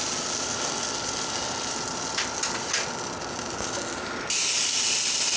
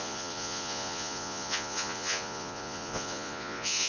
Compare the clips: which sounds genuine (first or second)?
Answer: first